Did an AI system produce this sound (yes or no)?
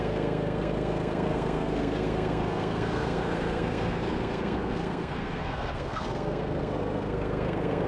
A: yes